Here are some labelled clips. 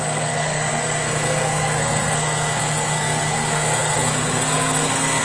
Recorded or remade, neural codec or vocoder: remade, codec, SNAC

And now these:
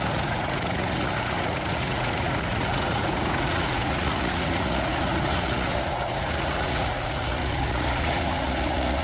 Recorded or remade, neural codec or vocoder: remade, vocoder, Vocos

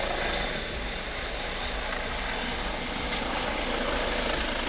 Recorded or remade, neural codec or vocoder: recorded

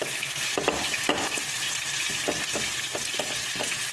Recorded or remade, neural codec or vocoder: recorded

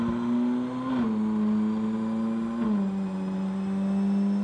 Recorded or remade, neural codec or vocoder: recorded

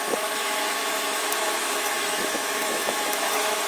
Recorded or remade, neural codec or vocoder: remade, autoencoder, DAC-VAE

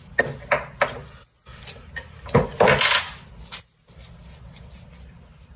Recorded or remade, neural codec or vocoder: recorded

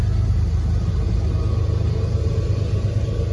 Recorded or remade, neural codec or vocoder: recorded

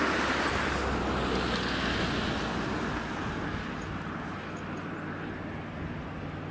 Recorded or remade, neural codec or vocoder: recorded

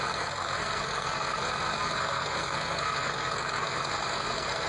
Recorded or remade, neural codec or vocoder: remade, codec, SNAC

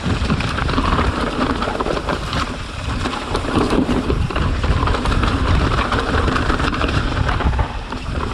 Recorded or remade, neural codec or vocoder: remade, vocoder, BigVGAN v2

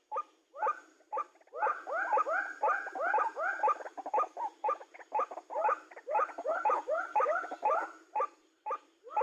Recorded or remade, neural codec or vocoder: remade, vocoder, BigVGAN v2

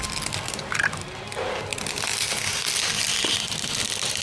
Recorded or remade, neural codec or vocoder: recorded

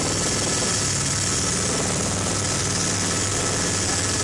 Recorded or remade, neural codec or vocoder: recorded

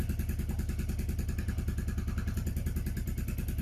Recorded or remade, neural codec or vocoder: recorded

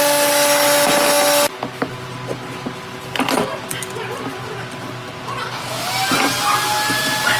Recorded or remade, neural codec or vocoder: recorded